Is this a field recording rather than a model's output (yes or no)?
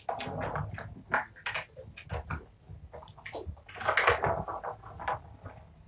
yes